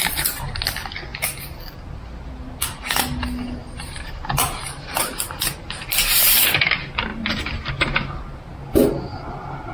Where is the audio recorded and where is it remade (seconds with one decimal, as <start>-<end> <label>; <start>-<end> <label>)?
0.0-3.6 recorded; 3.6-6.6 remade; 6.6-7.1 recorded; 7.1-7.7 remade; 7.7-9.7 recorded